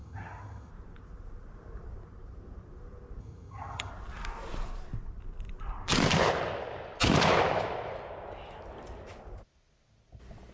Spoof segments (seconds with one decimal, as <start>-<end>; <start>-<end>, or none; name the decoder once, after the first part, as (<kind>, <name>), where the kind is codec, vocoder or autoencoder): 0.0-0.7 (vocoder, HiFi-GAN); 3.2-3.9